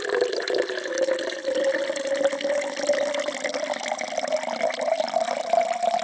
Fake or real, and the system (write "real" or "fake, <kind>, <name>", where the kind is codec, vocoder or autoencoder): real